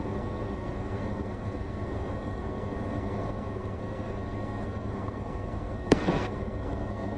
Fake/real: fake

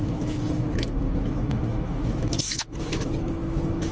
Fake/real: fake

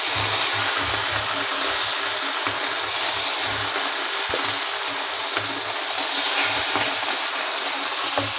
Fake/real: real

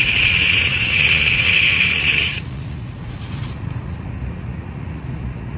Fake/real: fake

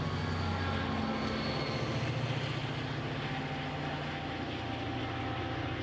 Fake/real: real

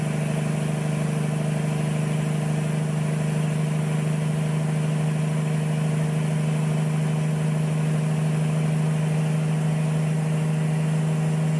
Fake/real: real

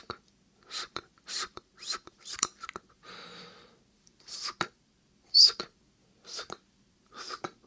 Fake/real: fake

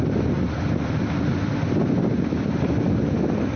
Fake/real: real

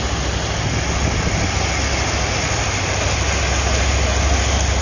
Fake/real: real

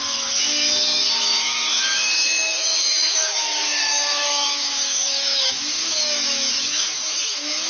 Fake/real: fake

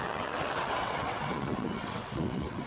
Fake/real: fake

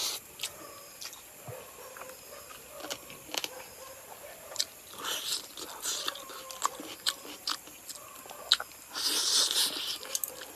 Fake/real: real